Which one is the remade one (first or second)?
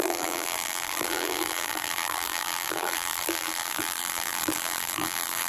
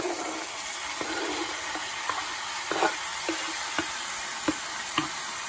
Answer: first